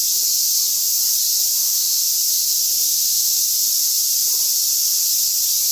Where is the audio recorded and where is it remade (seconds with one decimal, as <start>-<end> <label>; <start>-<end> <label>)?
0.0-1.6 recorded; 1.6-2.1 remade; 2.1-2.8 recorded; 2.8-3.4 remade; 3.4-5.7 recorded